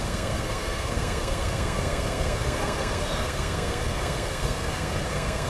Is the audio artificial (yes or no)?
yes